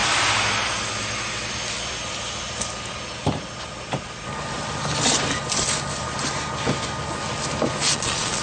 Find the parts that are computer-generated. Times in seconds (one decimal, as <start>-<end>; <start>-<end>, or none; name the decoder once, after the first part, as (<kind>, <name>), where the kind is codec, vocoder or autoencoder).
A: 7.9-8.4 (vocoder, Vocos)